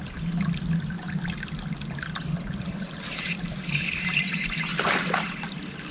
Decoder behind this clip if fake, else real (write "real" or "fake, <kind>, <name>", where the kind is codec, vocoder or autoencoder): real